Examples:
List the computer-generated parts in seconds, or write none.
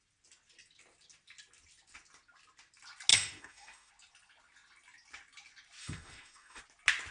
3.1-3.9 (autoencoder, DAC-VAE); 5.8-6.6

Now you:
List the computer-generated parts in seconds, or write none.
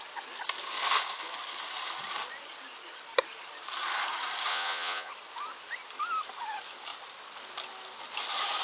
4.5-5.1 (vocoder, Vocos)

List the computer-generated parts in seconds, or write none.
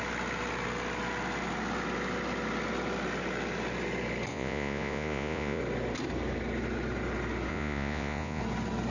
4.3-5.6 (vocoder, Vocos); 7.5-8.4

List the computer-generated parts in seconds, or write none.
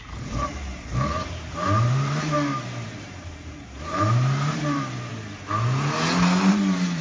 0.0-5.1 (vocoder, BigVGAN v2); 6.5-7.0